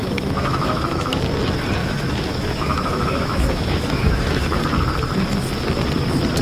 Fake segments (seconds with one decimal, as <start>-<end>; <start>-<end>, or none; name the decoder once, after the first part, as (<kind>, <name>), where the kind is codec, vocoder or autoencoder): 0.0-1.2 (autoencoder, DAC-VAE); 1.8-4.6